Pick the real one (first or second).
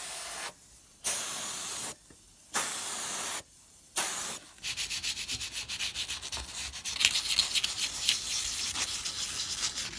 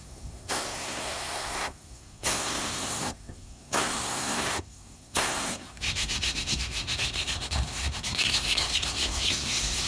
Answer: first